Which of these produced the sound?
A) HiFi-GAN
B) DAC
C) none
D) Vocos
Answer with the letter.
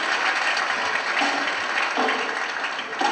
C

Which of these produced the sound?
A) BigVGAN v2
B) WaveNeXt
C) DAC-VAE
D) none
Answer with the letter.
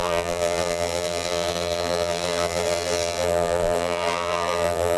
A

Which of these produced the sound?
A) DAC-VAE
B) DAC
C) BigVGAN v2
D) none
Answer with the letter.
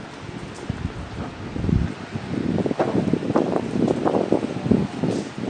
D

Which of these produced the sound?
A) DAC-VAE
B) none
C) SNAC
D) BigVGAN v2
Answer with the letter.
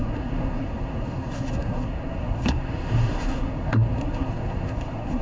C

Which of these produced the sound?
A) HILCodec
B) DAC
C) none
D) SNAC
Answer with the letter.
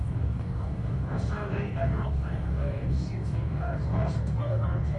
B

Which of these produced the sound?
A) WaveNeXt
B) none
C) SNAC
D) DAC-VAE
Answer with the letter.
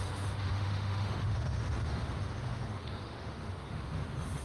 D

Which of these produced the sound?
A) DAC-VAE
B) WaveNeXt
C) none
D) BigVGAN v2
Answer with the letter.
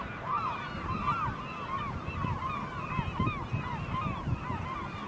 C